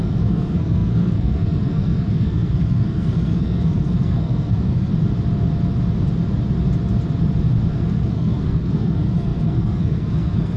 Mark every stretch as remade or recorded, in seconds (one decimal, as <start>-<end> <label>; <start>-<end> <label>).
0.0-4.9 remade; 4.9-7.7 recorded; 7.7-10.6 remade